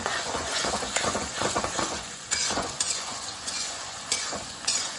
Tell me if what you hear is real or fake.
fake